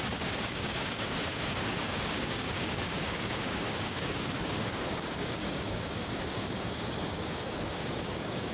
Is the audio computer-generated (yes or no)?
yes